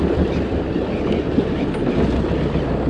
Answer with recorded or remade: recorded